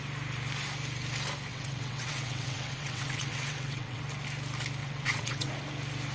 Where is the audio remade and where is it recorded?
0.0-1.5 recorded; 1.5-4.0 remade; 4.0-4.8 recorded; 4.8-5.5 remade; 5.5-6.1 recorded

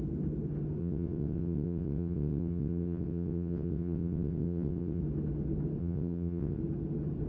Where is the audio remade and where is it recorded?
0.0-0.8 recorded; 0.8-5.0 remade; 5.0-5.8 recorded; 5.8-6.6 remade; 6.6-7.3 recorded

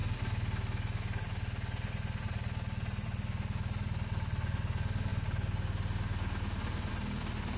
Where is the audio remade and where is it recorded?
0.0-7.6 recorded

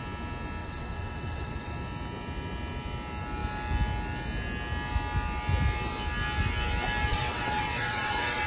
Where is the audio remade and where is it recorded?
0.0-0.6 recorded; 0.6-1.7 remade; 1.7-7.1 recorded; 7.1-8.5 remade

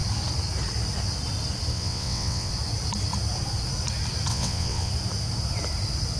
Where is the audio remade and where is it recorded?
0.0-1.7 recorded; 1.7-2.5 remade; 2.5-4.3 recorded; 4.3-4.9 remade; 4.9-6.2 recorded

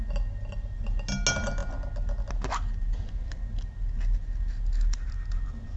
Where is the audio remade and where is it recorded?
0.0-5.8 recorded

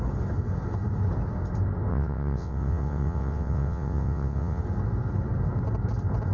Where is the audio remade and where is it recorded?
0.0-1.9 recorded; 1.9-4.6 remade; 4.6-6.3 recorded